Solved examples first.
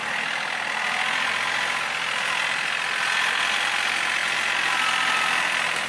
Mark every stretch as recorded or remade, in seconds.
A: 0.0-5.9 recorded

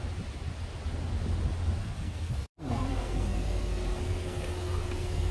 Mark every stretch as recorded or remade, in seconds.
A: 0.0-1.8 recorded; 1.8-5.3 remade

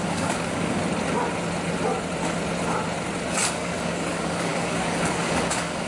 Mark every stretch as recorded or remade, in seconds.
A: 0.0-0.8 remade; 0.8-3.3 recorded; 3.3-5.9 remade

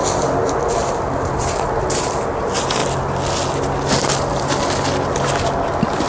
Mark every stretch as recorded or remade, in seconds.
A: 0.0-2.0 remade; 2.0-2.8 recorded; 2.8-4.3 remade; 4.3-6.1 recorded

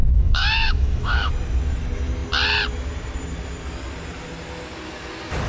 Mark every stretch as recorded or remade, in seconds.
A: 0.0-1.3 remade; 1.3-5.5 recorded

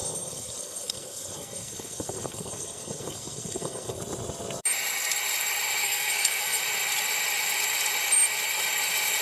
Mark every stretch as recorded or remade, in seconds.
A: 0.0-4.0 remade; 4.0-5.8 recorded; 5.8-6.6 remade; 6.6-9.2 recorded